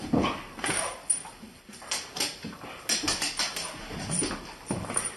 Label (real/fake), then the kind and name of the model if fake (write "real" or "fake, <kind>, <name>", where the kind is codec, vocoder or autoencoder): real